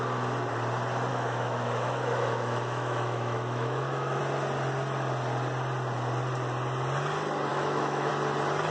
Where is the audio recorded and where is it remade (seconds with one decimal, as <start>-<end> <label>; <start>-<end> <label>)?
0.0-1.1 recorded; 1.1-4.2 remade; 4.2-7.5 recorded; 7.5-8.1 remade; 8.1-8.7 recorded